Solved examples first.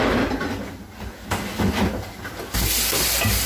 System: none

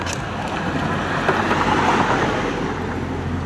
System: none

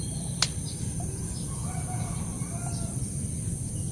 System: none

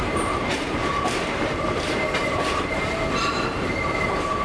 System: vocoder, BigVGAN v2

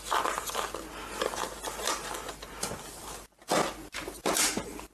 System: none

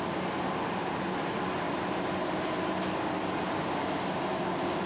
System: none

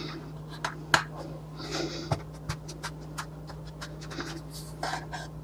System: none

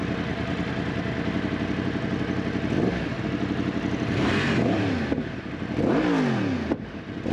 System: none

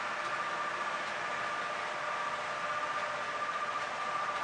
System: none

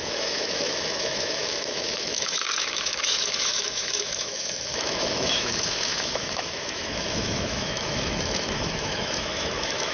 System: autoencoder, DAC-VAE